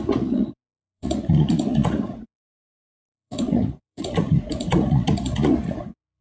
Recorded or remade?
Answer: remade